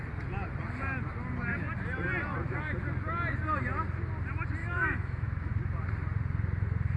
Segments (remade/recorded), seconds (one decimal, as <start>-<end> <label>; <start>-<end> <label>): 0.0-4.6 recorded; 4.6-5.5 remade; 5.5-7.0 recorded